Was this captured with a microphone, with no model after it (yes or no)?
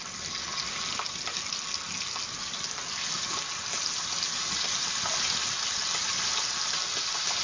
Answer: yes